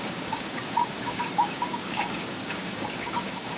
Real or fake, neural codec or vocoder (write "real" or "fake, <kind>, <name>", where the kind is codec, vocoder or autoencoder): fake, codec, DAC